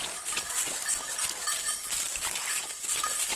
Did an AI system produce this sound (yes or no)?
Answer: no